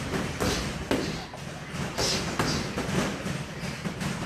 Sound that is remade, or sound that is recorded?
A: recorded